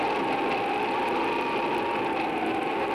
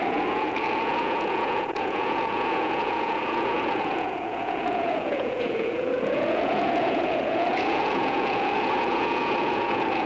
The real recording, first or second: first